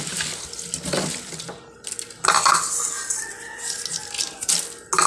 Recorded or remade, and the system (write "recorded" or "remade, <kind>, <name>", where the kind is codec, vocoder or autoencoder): recorded